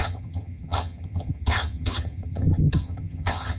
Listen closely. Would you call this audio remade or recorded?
remade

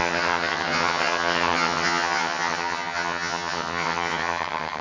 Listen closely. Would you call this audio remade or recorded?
remade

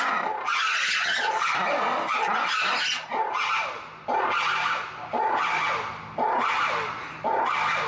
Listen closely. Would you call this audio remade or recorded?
recorded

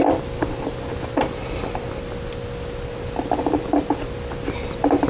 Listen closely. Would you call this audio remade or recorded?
recorded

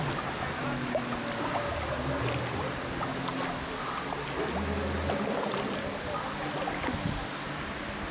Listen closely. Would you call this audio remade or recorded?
recorded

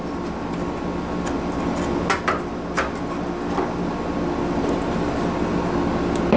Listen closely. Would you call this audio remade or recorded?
recorded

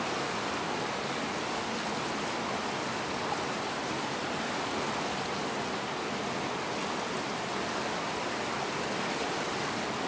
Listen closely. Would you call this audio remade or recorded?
recorded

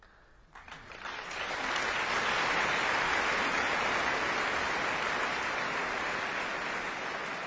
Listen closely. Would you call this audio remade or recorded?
recorded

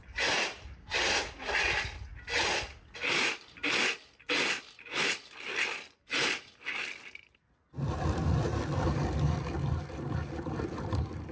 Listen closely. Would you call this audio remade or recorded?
recorded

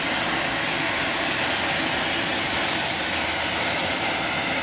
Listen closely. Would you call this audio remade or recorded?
recorded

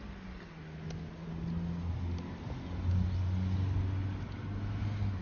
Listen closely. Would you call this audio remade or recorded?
recorded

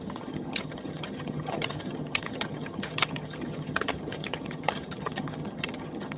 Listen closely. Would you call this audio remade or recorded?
remade